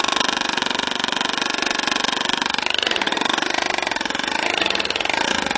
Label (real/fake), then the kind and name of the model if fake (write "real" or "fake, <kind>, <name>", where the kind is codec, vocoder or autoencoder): real